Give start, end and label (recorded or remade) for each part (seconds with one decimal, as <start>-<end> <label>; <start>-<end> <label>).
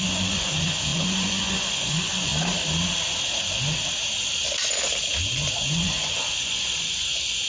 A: 0.0-2.3 remade; 2.3-5.7 recorded; 5.7-7.5 remade